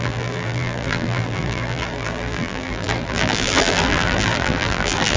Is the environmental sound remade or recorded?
remade